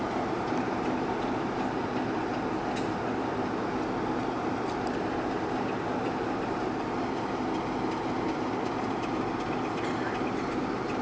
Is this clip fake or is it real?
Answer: real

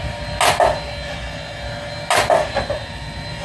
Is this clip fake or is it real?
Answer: real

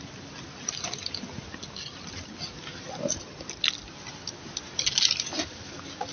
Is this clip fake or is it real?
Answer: real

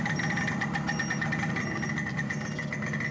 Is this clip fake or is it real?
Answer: real